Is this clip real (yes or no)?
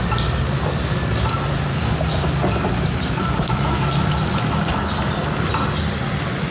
yes